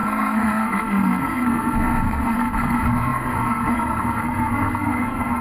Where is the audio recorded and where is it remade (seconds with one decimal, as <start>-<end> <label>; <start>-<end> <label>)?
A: 0.0-5.4 remade